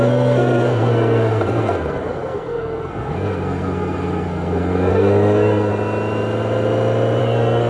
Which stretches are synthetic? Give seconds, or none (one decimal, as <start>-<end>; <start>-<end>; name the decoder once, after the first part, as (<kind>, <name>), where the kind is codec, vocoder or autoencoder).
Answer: 0.0-5.7 (codec, SNAC); 7.2-7.7